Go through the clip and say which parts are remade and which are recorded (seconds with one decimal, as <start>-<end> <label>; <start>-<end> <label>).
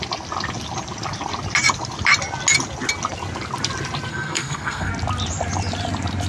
0.0-4.1 recorded; 4.1-4.9 remade; 4.9-6.3 recorded